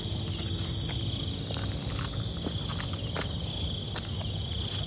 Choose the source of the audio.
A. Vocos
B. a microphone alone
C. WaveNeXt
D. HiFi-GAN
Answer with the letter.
B